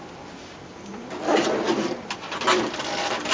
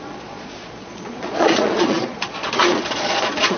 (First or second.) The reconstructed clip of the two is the second